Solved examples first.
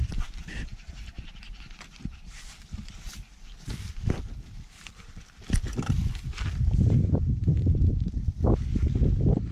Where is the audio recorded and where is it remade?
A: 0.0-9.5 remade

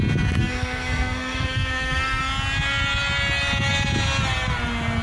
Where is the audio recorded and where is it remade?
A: 0.0-0.4 recorded; 0.4-2.2 remade; 2.2-5.0 recorded

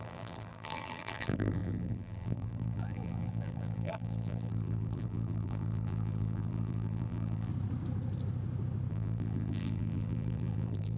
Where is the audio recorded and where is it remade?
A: 0.0-7.5 remade; 7.5-8.9 recorded; 8.9-11.0 remade

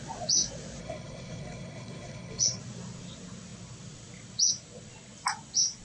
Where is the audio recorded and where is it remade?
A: 0.0-0.8 recorded; 0.8-2.6 remade; 2.6-5.8 recorded